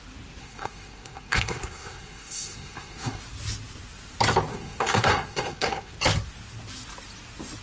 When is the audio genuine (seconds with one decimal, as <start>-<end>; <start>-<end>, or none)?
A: 0.0-0.4; 3.2-4.5; 5.9-7.6